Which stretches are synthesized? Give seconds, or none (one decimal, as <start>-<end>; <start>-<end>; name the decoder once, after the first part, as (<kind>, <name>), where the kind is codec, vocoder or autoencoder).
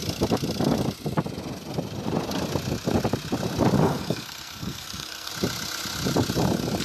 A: 3.8-5.3 (codec, SNAC)